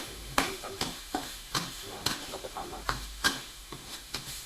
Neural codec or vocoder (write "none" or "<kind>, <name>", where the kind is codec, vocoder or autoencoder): autoencoder, DAC-VAE